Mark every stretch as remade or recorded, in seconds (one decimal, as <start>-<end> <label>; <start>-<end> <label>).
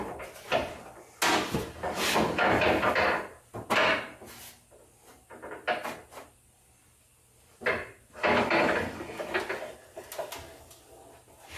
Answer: 0.0-11.6 recorded